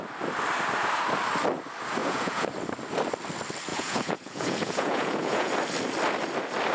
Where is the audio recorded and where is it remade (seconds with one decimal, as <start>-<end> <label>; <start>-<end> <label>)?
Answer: 0.0-2.0 recorded; 2.0-2.5 remade; 2.5-3.7 recorded; 3.7-5.5 remade; 5.5-6.7 recorded